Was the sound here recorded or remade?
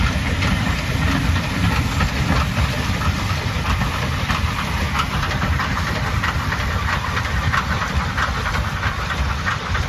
remade